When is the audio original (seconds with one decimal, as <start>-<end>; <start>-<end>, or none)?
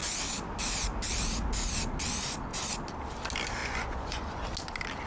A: 0.0-3.6; 4.4-5.1